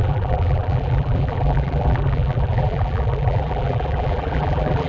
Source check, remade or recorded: remade